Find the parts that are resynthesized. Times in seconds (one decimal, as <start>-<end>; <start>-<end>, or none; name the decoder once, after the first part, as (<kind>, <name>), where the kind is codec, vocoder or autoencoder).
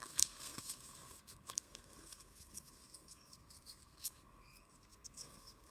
0.0-5.7 (codec, SNAC)